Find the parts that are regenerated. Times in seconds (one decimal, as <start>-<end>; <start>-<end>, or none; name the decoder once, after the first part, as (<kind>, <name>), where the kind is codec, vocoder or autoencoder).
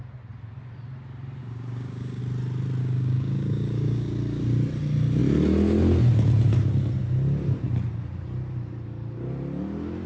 1.4-2.2 (codec, DAC); 2.8-4.1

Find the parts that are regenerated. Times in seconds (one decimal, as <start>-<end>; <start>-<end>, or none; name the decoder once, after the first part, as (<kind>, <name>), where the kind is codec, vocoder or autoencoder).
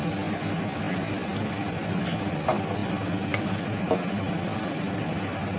none